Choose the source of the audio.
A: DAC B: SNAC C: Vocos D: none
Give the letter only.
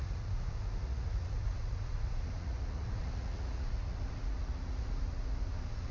C